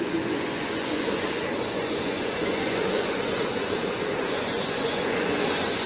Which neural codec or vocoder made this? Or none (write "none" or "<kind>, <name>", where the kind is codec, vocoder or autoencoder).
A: vocoder, Vocos